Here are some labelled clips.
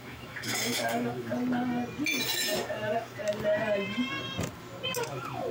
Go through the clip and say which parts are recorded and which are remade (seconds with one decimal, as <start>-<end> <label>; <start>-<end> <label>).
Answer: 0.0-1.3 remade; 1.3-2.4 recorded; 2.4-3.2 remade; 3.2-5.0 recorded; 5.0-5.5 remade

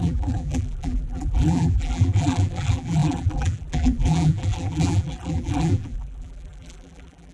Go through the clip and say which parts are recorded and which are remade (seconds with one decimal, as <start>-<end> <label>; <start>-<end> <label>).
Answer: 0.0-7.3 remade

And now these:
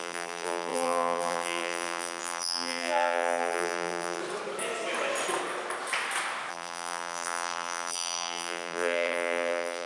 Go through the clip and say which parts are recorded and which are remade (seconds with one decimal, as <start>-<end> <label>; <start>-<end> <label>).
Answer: 0.0-4.2 remade; 4.2-6.5 recorded; 6.5-9.9 remade

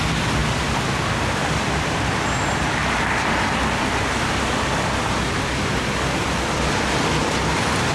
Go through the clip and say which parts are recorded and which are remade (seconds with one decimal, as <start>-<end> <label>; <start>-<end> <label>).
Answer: 0.0-0.4 remade; 0.4-1.1 recorded; 1.1-2.8 remade; 2.8-7.2 recorded; 7.2-7.9 remade

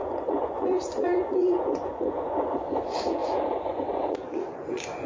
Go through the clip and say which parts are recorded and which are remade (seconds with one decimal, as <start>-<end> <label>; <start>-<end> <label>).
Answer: 0.0-5.1 remade